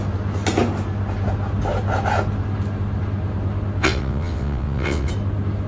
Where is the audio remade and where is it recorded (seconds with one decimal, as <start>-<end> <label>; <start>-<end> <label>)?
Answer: 0.0-3.8 recorded; 3.8-5.1 remade; 5.1-5.7 recorded